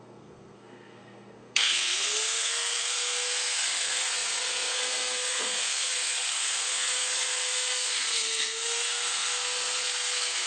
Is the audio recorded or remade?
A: remade